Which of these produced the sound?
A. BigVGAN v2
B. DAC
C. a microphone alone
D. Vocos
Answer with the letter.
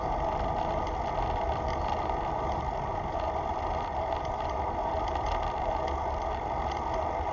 C